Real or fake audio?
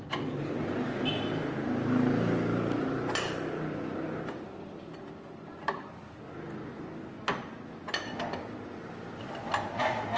real